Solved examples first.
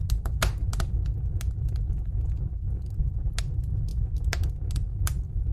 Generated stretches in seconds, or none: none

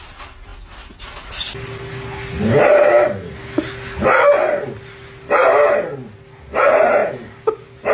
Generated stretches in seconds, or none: none